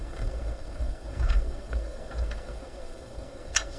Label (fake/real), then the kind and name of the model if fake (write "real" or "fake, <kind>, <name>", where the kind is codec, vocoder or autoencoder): fake, codec, SNAC